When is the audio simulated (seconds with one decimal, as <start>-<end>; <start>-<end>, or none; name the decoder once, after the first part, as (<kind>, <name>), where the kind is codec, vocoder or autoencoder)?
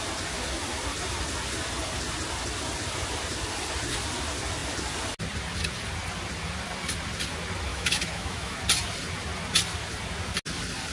7.7-8.6 (autoencoder, DAC-VAE)